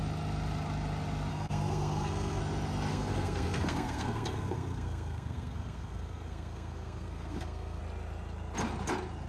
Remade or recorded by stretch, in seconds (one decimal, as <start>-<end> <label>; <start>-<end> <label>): 0.0-1.3 recorded; 1.3-2.4 remade; 2.4-2.9 recorded; 2.9-7.8 remade; 7.8-9.3 recorded